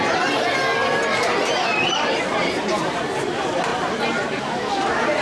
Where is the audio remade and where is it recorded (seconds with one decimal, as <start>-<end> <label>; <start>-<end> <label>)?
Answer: 0.0-0.8 recorded; 0.8-2.6 remade; 2.6-5.2 recorded